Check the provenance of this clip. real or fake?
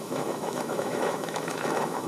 fake